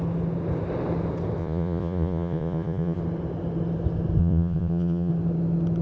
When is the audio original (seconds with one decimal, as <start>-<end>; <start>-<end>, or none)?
0.0-1.4; 3.0-4.2; 5.1-5.8